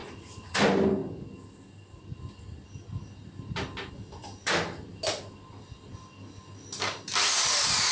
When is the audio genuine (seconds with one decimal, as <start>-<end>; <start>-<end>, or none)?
0.6-7.9

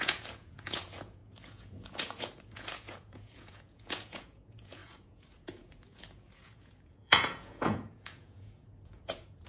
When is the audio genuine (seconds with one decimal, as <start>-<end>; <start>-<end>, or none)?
none

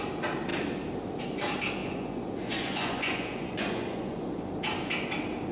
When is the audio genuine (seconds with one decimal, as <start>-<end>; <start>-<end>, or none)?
0.0-1.8; 4.4-5.5